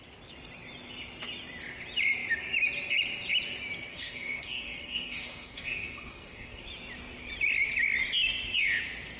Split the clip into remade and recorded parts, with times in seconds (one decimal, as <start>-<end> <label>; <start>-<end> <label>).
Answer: 0.0-3.9 recorded; 3.9-6.7 remade; 6.7-9.2 recorded